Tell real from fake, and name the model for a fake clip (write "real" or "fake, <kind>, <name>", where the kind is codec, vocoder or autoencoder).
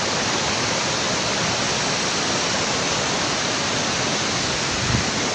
real